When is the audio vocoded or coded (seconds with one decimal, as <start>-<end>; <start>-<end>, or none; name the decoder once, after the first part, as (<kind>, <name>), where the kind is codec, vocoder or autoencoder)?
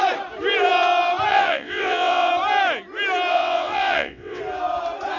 1.3-2.3 (vocoder, WaveNeXt); 3.3-4.4